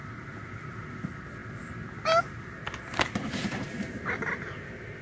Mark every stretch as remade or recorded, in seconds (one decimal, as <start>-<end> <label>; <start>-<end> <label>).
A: 0.0-5.0 recorded